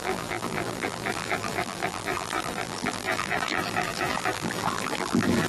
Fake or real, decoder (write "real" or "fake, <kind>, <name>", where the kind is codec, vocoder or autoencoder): fake, vocoder, BigVGAN v2